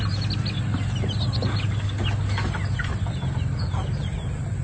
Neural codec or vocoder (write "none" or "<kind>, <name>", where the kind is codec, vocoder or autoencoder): none